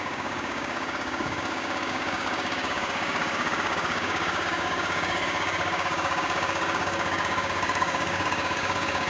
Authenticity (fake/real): fake